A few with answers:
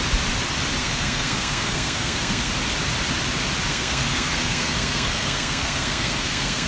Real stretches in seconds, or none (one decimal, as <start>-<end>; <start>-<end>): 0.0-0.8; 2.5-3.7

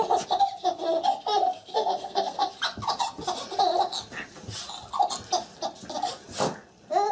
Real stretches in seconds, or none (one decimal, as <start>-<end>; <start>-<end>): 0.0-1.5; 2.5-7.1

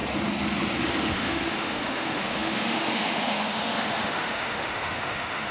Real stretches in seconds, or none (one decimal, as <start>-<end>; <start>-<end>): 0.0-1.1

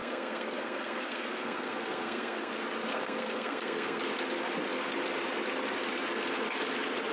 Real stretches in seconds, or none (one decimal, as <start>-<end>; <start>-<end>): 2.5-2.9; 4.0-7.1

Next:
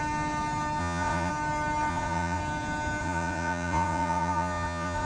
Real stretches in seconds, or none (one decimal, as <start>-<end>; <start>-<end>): 0.0-0.8; 1.3-1.9; 2.4-3.0

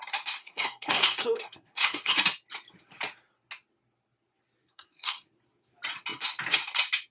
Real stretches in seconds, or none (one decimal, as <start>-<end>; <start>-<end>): 0.0-0.4; 2.1-4.6; 5.3-7.1

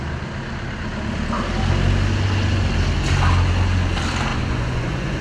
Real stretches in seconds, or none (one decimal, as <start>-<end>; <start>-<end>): 0.0-4.3

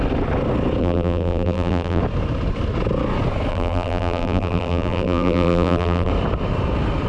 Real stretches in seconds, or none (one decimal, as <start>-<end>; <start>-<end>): 0.0-0.8; 2.0-3.5; 6.1-7.1